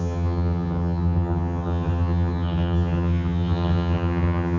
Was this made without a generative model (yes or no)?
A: no